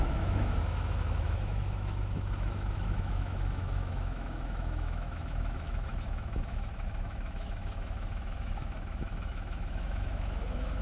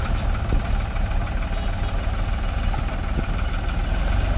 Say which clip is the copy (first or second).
first